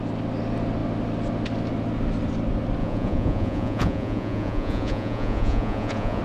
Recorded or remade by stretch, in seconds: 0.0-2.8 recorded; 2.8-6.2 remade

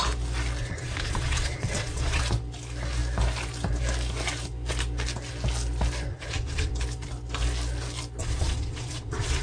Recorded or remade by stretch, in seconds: 0.0-0.6 recorded; 0.6-2.2 remade; 2.2-6.1 recorded; 6.1-6.7 remade; 6.7-8.2 recorded; 8.2-9.4 remade

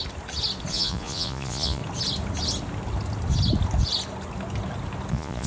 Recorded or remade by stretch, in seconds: 0.0-0.7 recorded; 0.7-1.8 remade; 1.8-5.1 recorded; 5.1-5.5 remade

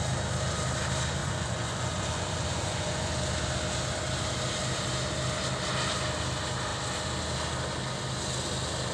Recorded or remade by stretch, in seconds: 0.0-1.2 recorded; 1.2-3.1 remade; 3.1-8.9 recorded

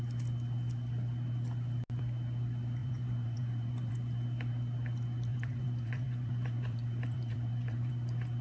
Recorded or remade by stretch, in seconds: 0.0-2.8 recorded; 2.8-3.9 remade; 3.9-5.3 recorded; 5.3-7.9 remade; 7.9-8.4 recorded